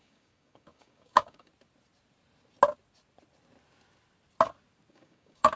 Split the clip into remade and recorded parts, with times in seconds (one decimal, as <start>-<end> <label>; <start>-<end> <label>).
0.0-1.5 remade; 1.5-4.9 recorded; 4.9-5.6 remade